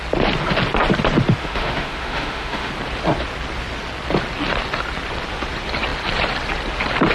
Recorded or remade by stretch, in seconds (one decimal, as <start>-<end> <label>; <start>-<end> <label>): 0.0-1.4 recorded; 1.4-2.7 remade; 2.7-7.1 recorded